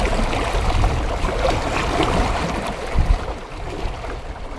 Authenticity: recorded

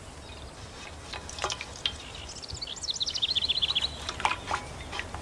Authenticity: recorded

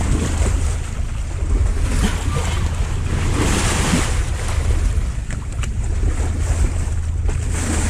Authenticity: recorded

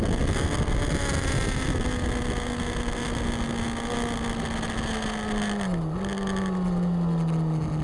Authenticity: recorded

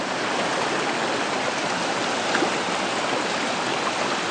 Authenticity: recorded